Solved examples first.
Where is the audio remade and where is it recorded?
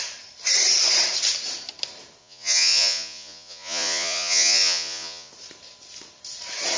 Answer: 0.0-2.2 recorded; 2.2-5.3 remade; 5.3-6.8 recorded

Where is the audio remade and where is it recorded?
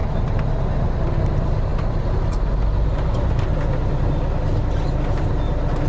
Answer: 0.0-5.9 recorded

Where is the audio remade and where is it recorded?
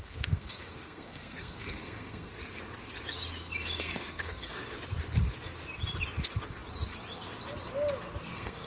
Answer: 0.0-2.3 remade; 2.3-3.8 recorded; 3.8-4.6 remade; 4.6-8.2 recorded; 8.2-8.7 remade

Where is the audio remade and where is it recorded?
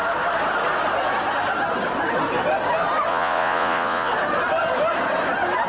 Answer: 0.0-3.1 recorded; 3.1-4.1 remade; 4.1-5.7 recorded